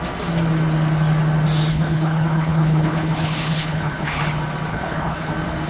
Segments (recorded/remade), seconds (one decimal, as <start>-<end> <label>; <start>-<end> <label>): 0.0-1.7 recorded; 1.7-4.2 remade; 4.2-4.7 recorded; 4.7-5.3 remade; 5.3-5.7 recorded